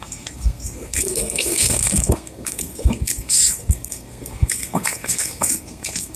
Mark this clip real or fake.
fake